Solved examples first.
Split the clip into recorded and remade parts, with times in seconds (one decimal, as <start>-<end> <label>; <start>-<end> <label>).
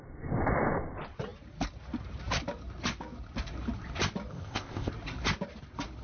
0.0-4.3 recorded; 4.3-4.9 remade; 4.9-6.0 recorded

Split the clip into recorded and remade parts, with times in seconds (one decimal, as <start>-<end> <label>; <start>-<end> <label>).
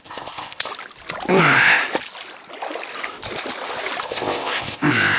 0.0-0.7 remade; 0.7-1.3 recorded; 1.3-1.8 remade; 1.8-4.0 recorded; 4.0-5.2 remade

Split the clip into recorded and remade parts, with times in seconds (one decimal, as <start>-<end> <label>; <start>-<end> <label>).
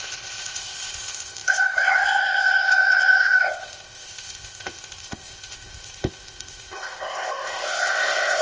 0.0-8.4 remade